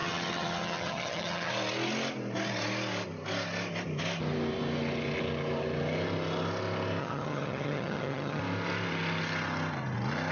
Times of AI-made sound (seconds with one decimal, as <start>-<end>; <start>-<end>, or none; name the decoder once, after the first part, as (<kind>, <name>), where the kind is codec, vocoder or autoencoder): 0.0-1.5 (vocoder, HiFi-GAN); 7.0-8.4